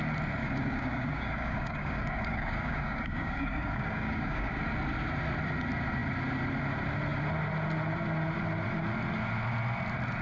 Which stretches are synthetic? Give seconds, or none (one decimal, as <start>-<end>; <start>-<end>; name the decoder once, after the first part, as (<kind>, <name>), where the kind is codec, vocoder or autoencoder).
0.4-4.6 (codec, DAC)